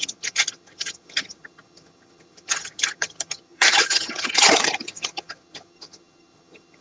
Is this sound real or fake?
fake